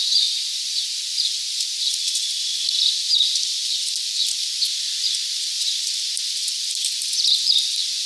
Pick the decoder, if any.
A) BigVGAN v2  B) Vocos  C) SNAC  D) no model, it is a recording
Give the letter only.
A